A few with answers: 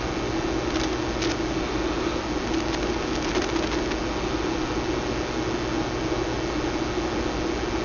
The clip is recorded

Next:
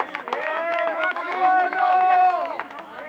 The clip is remade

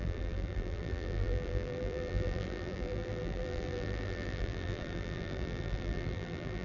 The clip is remade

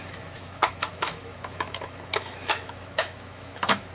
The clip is remade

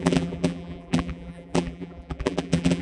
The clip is remade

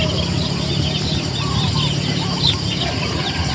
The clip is recorded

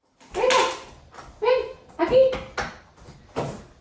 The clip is recorded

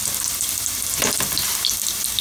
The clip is recorded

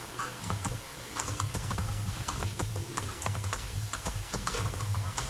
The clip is remade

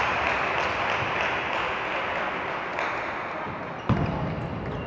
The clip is recorded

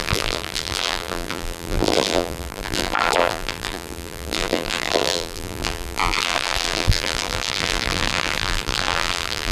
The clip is remade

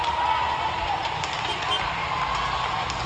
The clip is recorded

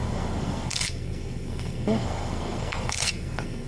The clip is remade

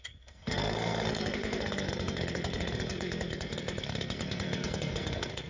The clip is remade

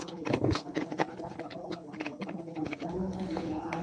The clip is remade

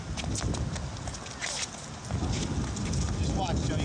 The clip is recorded